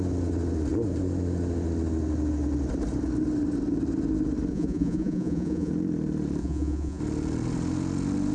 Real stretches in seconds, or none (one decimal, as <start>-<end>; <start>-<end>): 0.0-4.5; 5.7-6.4; 7.0-8.3